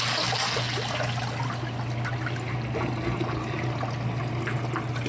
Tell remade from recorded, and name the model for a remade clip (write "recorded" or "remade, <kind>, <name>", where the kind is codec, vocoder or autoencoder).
recorded